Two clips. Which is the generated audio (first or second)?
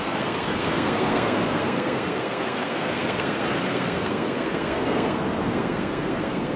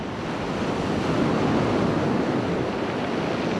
first